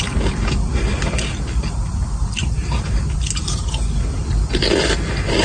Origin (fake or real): real